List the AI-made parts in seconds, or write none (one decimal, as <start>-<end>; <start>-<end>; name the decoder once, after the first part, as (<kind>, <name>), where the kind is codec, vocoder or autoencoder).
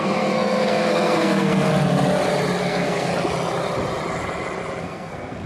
0.0-1.7 (codec, SNAC); 2.6-3.1; 4.8-5.5